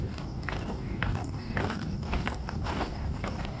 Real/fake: fake